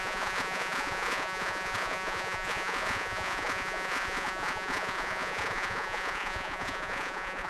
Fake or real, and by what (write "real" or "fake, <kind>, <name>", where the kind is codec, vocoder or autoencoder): fake, vocoder, Vocos